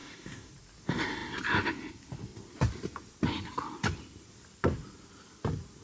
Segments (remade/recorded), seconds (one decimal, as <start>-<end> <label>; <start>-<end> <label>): 0.0-0.5 remade; 0.5-5.8 recorded